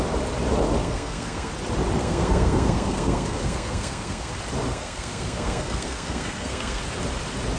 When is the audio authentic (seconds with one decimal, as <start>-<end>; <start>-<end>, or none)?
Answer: 0.0-0.8; 1.5-2.0; 4.3-4.7; 6.8-7.6